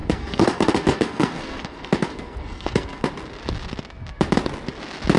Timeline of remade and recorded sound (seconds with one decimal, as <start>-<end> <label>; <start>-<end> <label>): 0.0-3.1 remade; 3.1-5.2 recorded